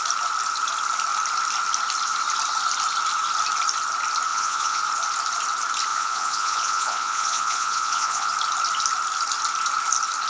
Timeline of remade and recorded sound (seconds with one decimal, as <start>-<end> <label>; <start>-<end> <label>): 0.0-4.3 recorded; 4.3-4.8 remade; 4.8-5.9 recorded; 5.9-8.3 remade; 8.3-10.3 recorded